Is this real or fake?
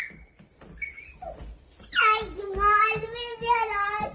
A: real